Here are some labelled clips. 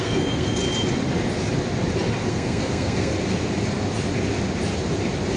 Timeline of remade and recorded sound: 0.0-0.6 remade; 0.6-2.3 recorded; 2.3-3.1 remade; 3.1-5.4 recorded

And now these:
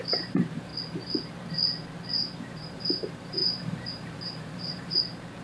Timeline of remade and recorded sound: 0.0-0.7 remade; 0.7-2.4 recorded; 2.4-5.4 remade

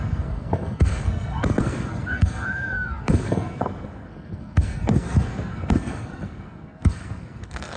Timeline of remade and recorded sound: 0.0-7.8 remade

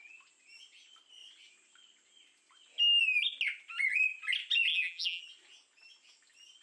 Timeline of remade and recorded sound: 0.0-4.7 recorded; 4.7-5.2 remade; 5.2-6.6 recorded

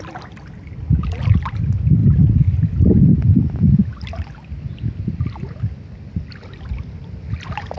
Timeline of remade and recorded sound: 0.0-7.8 recorded

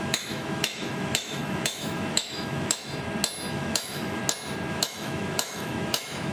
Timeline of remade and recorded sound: 0.0-2.8 remade; 2.8-3.5 recorded; 3.5-4.2 remade; 4.2-4.7 recorded; 4.7-6.3 remade